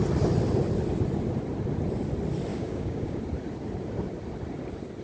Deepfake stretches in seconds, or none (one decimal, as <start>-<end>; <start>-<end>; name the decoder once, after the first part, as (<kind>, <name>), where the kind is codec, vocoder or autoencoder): 2.5-3.2 (codec, DAC)